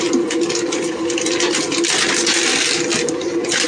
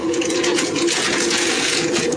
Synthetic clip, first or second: second